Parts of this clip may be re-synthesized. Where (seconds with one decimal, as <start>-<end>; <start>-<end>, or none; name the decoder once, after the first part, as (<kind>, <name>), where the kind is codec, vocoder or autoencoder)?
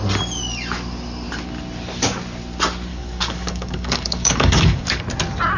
2.9-5.0 (codec, DAC)